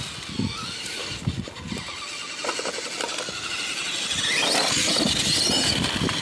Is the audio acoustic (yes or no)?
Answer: yes